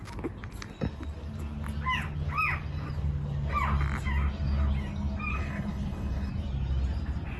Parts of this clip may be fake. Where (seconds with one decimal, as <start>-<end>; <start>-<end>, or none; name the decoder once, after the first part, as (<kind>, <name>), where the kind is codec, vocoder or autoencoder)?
5.3-6.3 (codec, HILCodec)